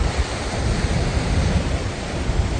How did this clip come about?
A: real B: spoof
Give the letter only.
A